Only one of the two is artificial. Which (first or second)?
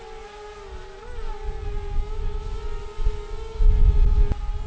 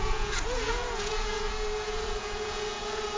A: second